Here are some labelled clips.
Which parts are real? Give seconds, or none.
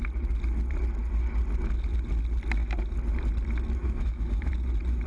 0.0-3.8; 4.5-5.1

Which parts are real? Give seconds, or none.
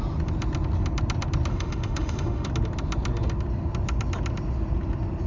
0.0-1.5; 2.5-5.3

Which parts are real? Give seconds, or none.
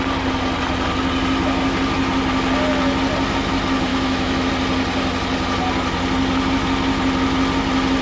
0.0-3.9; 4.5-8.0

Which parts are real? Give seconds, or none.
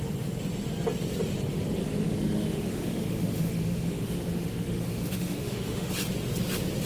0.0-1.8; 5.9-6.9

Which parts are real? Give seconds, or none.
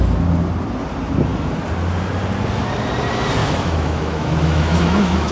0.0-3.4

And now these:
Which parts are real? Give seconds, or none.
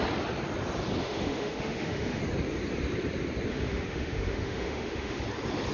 0.0-1.0; 2.2-3.5; 5.2-5.7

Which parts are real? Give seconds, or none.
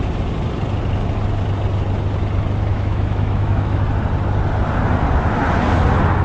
0.0-2.7; 3.8-6.2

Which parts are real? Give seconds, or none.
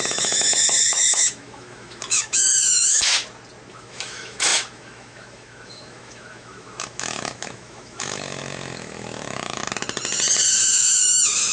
3.1-3.7; 9.6-10.5